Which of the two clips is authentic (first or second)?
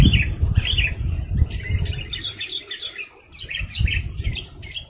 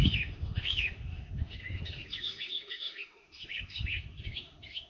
first